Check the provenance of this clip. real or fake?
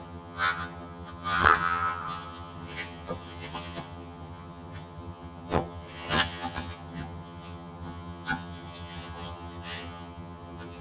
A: fake